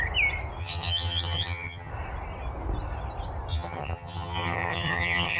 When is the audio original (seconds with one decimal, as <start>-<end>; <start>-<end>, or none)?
0.0-0.6; 1.9-3.5